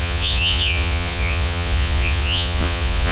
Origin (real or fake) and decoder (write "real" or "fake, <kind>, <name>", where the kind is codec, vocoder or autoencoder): fake, vocoder, Vocos